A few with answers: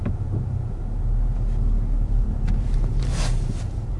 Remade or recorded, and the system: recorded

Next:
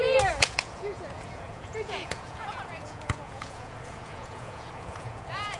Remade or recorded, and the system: remade, vocoder, Vocos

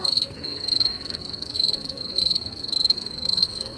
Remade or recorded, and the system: remade, codec, SNAC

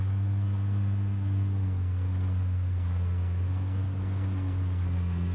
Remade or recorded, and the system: remade, codec, SNAC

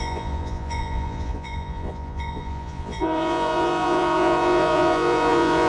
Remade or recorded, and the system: remade, vocoder, Vocos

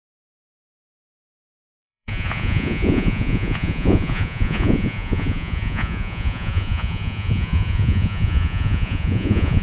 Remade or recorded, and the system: remade, vocoder, Vocos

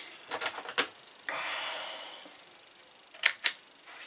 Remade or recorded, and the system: recorded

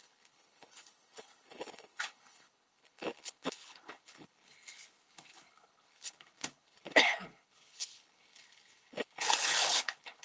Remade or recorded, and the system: remade, codec, HILCodec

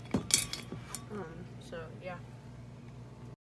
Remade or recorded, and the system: recorded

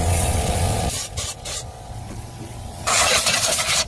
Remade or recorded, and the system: remade, vocoder, Vocos